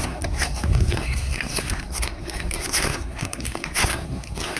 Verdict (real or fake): fake